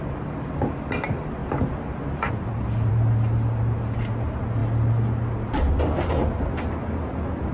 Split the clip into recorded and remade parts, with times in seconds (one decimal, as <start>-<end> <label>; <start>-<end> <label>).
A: 0.0-7.5 recorded